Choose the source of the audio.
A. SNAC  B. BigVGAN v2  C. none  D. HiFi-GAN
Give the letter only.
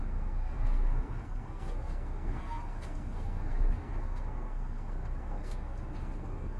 A